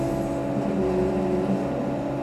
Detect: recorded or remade recorded